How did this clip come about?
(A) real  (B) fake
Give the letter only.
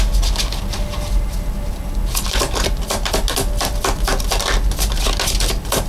A